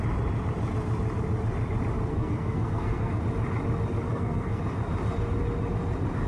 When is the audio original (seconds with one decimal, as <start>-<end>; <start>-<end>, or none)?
0.0-2.1; 3.2-4.1; 4.6-6.3